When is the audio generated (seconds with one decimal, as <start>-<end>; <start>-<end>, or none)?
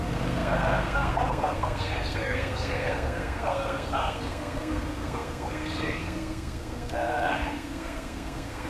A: 0.0-8.7